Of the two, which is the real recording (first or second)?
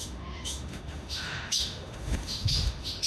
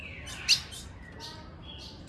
second